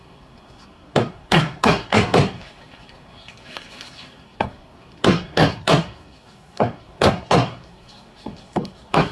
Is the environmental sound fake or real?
fake